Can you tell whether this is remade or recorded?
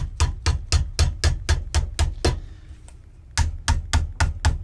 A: recorded